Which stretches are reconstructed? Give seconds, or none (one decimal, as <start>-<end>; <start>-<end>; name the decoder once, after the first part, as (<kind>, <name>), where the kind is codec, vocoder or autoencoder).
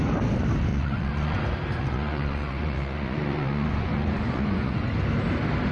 0.7-1.4 (vocoder, Vocos); 1.8-4.9